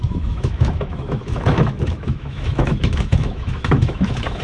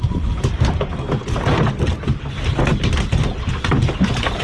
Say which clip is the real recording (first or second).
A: second